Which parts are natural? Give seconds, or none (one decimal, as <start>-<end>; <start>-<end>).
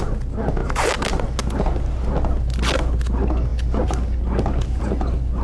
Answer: 0.0-5.4